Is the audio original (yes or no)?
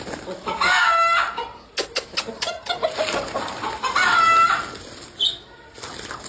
yes